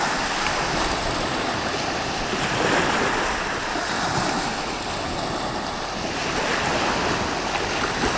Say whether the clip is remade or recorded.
recorded